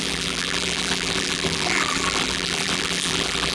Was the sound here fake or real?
fake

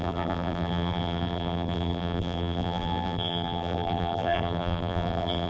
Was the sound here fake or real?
fake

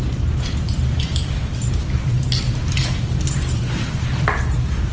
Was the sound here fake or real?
fake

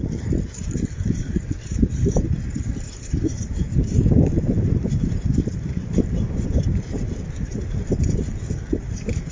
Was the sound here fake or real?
fake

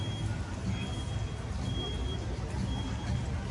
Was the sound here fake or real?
real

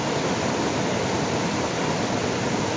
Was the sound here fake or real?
fake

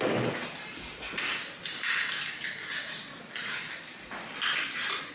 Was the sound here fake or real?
real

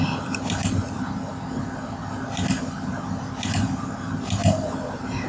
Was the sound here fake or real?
real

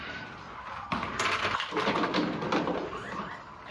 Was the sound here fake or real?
real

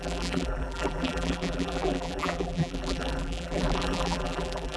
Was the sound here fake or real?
fake